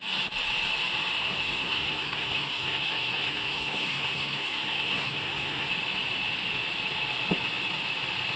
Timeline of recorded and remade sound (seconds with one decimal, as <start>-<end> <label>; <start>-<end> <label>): 0.0-1.2 recorded; 1.2-5.7 remade; 5.7-8.4 recorded